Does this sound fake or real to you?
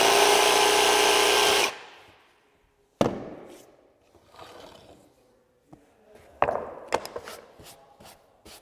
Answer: real